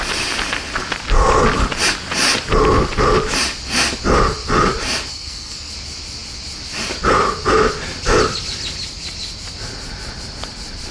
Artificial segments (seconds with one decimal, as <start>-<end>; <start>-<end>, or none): 5.1-5.7